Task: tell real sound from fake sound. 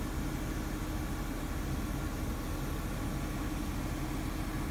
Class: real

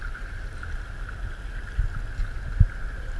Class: real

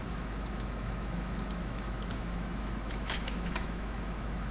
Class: fake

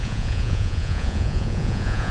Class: fake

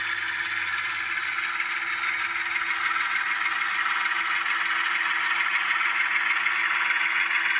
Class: real